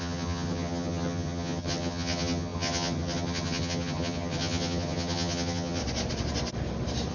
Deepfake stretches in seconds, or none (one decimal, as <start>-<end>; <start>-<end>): 0.0-5.8